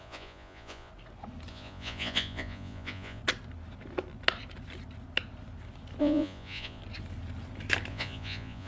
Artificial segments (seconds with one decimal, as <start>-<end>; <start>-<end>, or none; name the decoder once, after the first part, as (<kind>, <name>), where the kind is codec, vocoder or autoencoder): 0.0-0.9 (vocoder, Vocos); 1.5-3.2; 6.0-6.8; 7.9-8.7